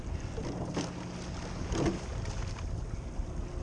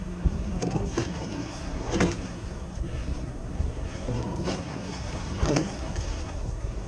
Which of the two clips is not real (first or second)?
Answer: second